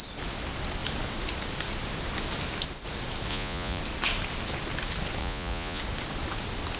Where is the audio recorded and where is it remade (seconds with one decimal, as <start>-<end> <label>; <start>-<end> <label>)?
0.0-3.3 recorded; 3.3-3.8 remade; 3.8-5.2 recorded; 5.2-5.8 remade; 5.8-6.8 recorded